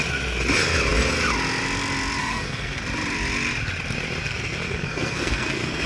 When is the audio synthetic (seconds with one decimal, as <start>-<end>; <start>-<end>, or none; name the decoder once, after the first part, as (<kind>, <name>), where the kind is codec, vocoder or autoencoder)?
2.2-2.8 (codec, SNAC); 4.2-5.9